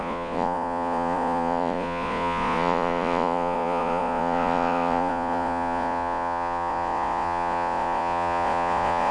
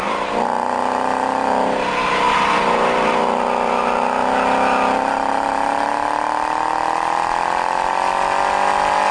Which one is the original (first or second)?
second